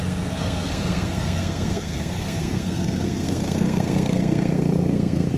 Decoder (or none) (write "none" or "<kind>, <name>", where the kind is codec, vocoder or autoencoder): codec, SNAC